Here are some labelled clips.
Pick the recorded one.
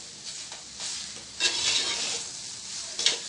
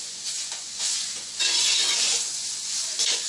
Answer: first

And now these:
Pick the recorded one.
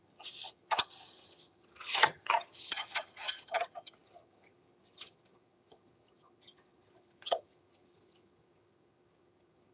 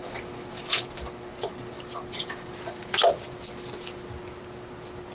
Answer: second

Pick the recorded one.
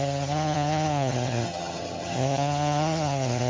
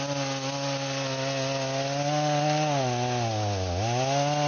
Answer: second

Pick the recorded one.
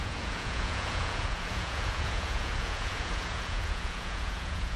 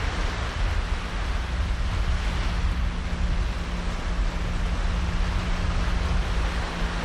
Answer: second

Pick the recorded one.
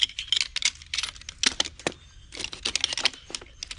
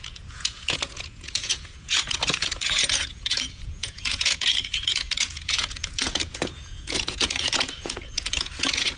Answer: first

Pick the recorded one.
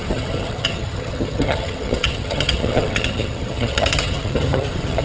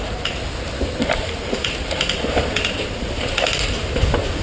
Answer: second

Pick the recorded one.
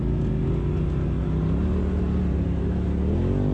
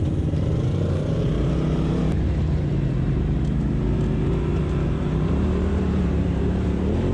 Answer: first